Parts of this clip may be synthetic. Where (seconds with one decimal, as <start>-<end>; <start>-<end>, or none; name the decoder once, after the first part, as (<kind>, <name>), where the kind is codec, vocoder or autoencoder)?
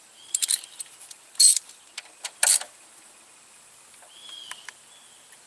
none